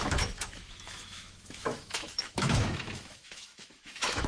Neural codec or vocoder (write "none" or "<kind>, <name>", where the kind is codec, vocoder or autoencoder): autoencoder, DAC-VAE